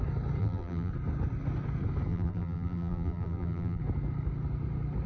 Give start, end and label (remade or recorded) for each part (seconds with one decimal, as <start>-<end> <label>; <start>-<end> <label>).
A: 0.0-0.4 recorded; 0.4-0.9 remade; 0.9-2.1 recorded; 2.1-3.8 remade; 3.8-5.1 recorded